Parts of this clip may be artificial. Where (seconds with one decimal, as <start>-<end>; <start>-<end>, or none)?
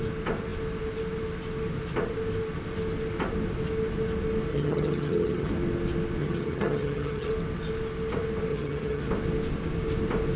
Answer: 4.5-5.5; 6.2-7.3; 8.5-9.1